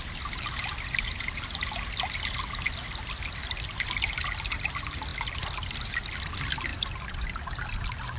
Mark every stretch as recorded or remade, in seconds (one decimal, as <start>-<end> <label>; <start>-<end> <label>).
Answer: 0.0-8.2 recorded